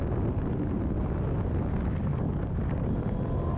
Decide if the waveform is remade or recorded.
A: recorded